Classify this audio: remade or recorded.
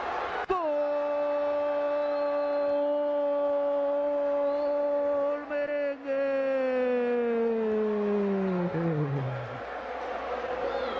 recorded